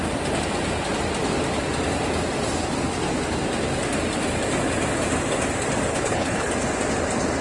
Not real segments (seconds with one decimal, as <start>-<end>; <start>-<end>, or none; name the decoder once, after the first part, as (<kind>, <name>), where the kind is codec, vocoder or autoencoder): 5.9-6.5 (codec, HILCodec)